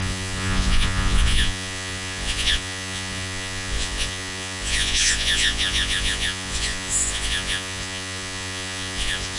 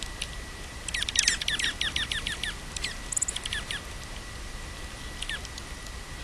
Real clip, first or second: second